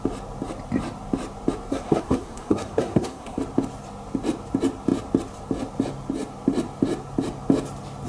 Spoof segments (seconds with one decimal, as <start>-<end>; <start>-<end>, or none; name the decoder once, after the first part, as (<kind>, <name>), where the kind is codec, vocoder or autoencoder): 1.7-3.4 (codec, SNAC)

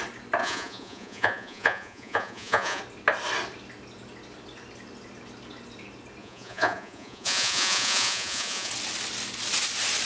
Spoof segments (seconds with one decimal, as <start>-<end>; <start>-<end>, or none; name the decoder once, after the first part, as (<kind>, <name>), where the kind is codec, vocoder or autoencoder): 0.4-2.8 (vocoder, Vocos); 6.2-8.7

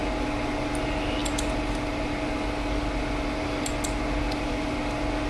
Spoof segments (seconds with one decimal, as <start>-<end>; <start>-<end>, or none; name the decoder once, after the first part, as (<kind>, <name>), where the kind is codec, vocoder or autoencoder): none

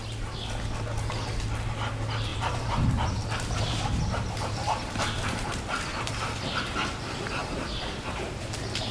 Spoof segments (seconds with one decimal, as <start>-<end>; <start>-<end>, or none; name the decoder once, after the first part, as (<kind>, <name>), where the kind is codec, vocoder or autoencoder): 2.3-5.6 (vocoder, BigVGAN v2); 7.4-8.5